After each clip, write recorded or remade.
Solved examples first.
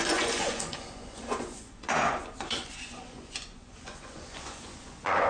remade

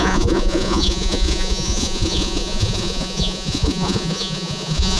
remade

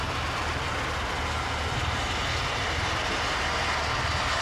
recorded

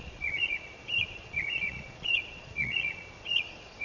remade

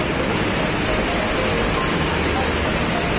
recorded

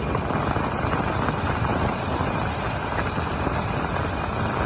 recorded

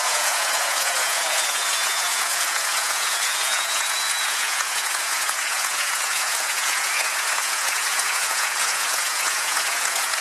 remade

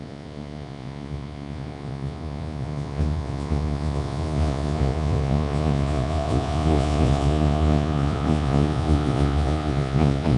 remade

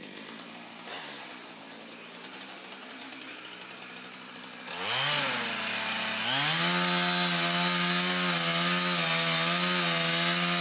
recorded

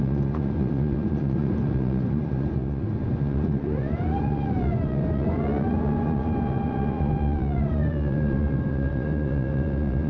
remade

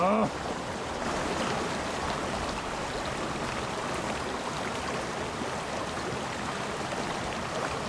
recorded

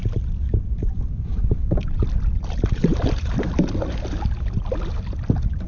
recorded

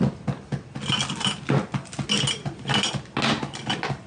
recorded